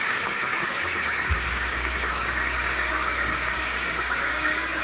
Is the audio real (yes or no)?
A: no